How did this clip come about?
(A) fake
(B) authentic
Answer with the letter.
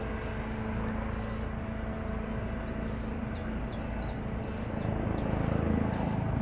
B